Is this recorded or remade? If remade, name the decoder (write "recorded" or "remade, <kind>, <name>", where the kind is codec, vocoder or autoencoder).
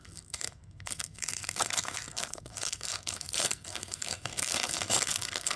remade, codec, SNAC